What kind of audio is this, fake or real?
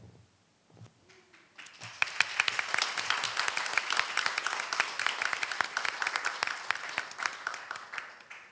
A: real